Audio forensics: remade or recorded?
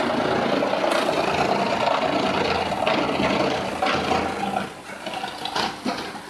recorded